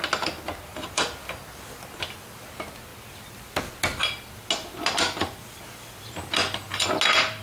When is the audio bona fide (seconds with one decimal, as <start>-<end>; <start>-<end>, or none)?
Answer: 0.0-7.4